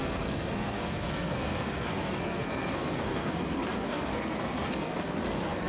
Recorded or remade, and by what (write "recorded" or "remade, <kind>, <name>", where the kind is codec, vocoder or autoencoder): remade, codec, SNAC